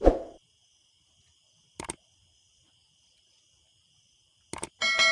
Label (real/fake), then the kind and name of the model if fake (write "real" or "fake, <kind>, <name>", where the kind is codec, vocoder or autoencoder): real